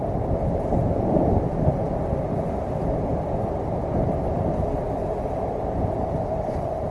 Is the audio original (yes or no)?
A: no